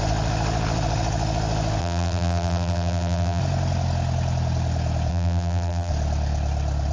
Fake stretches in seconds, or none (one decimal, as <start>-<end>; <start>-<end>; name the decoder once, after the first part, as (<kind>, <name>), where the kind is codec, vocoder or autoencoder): 1.8-3.4 (vocoder, BigVGAN v2); 5.1-5.9